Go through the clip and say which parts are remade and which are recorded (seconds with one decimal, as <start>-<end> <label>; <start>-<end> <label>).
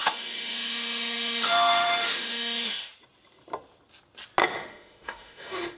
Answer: 0.0-2.9 remade; 2.9-4.4 recorded; 4.4-5.8 remade